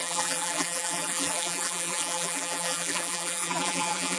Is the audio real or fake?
fake